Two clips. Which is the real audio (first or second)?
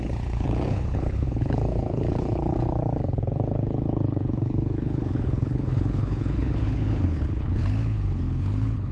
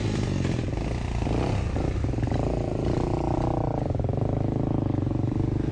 second